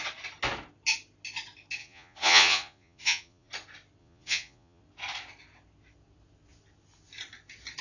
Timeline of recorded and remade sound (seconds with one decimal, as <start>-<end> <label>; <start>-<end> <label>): 0.0-1.8 recorded; 1.8-3.5 remade; 3.5-4.0 recorded; 4.0-4.8 remade; 4.8-7.8 recorded